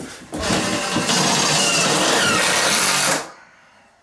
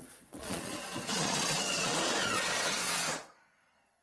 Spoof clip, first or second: second